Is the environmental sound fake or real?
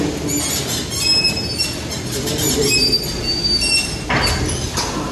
real